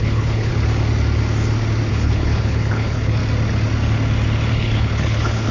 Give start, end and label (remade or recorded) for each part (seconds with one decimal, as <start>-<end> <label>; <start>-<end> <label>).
0.0-0.5 remade; 0.5-1.9 recorded; 1.9-3.2 remade; 3.2-4.5 recorded; 4.5-5.5 remade